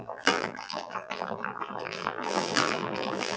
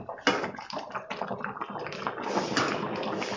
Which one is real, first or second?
second